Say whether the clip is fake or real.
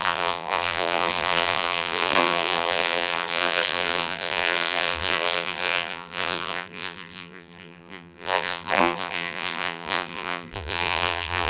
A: fake